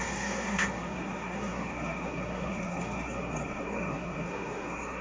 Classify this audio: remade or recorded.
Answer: remade